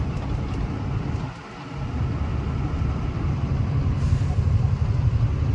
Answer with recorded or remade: recorded